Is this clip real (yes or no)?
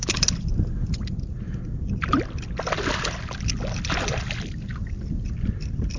yes